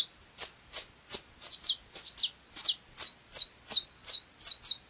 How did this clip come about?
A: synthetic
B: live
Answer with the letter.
B